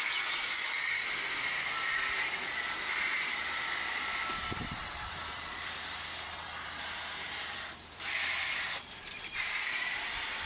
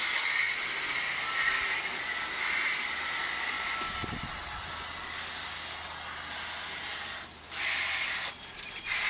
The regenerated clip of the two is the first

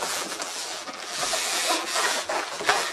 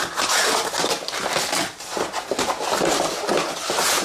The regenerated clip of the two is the first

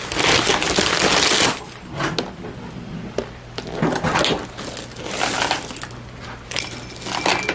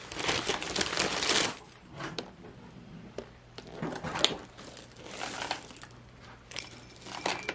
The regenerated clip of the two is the second